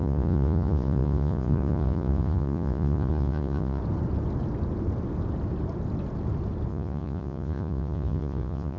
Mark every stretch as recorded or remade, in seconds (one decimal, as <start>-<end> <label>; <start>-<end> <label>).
0.0-3.8 remade; 3.8-6.7 recorded; 6.7-8.8 remade